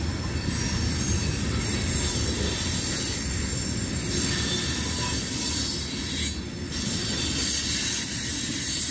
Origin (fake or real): real